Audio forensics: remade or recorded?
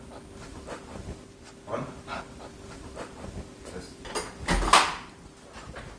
recorded